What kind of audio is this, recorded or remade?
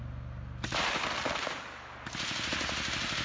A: recorded